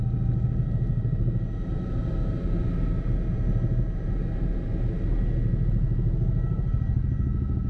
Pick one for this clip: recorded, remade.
recorded